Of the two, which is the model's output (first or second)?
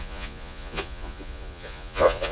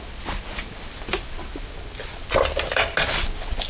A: first